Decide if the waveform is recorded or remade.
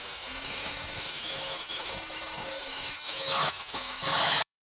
remade